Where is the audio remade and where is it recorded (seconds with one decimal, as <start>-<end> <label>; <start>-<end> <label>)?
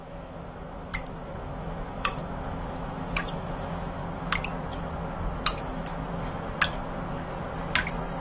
0.0-4.0 remade; 4.0-5.6 recorded; 5.6-6.0 remade; 6.0-8.2 recorded